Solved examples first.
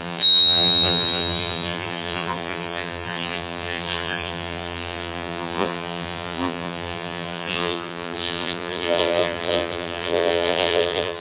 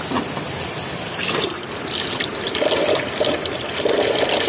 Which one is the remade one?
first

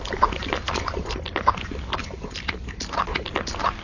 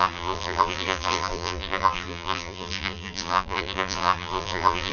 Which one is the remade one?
second